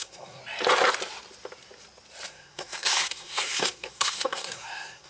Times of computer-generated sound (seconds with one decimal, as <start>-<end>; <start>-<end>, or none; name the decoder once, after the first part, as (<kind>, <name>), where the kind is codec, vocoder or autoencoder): 0.0-0.4 (codec, SNAC); 2.3-5.1